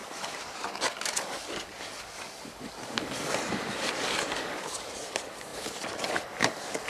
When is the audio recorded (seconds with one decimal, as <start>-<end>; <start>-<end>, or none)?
none